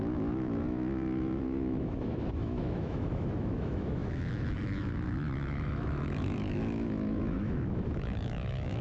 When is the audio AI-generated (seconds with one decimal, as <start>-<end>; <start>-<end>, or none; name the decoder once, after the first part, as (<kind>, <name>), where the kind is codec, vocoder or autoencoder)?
0.0-8.8 (autoencoder, DAC-VAE)